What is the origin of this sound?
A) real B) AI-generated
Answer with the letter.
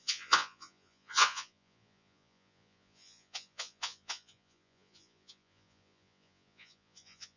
B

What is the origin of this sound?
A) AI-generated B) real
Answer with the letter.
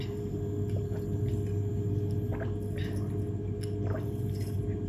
B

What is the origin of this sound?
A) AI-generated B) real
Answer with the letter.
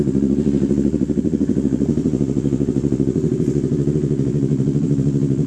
A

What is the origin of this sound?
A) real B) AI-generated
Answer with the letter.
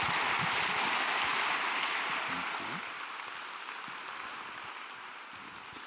A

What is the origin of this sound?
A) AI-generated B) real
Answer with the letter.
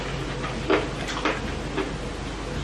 B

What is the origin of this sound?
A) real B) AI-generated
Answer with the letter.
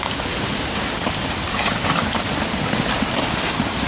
A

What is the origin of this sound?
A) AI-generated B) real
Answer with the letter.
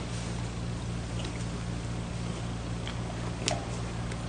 B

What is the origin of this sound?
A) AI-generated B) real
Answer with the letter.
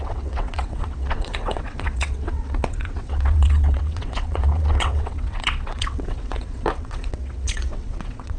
A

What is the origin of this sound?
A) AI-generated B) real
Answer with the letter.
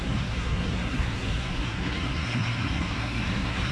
A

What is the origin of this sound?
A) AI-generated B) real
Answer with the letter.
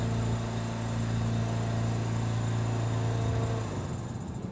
B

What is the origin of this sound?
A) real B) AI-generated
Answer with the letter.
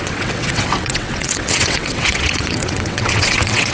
B